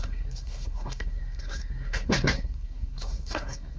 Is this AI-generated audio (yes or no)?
yes